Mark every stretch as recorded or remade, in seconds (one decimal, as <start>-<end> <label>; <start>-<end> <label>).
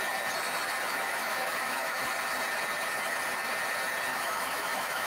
0.0-0.9 recorded; 0.9-2.0 remade; 2.0-4.1 recorded; 4.1-5.1 remade